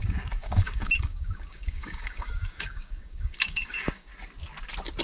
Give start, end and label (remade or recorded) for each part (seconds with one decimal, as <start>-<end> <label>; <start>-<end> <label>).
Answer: 0.0-4.1 remade; 4.1-5.0 recorded